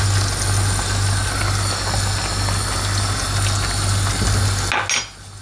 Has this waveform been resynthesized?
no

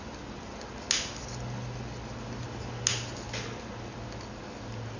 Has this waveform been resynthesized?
no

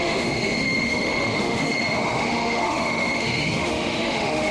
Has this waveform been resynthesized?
yes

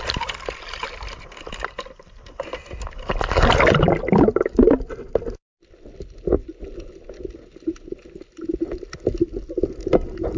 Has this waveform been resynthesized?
no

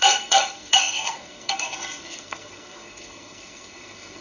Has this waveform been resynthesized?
yes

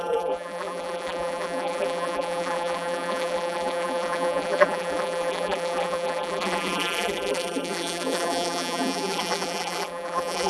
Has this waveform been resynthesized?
yes